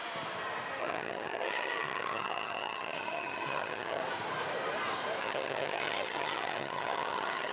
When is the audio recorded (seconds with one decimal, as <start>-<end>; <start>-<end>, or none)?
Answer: 0.0-0.8; 4.0-5.2